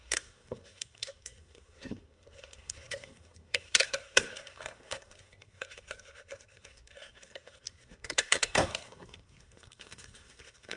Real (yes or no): no